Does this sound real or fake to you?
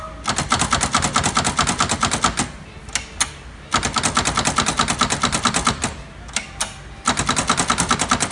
real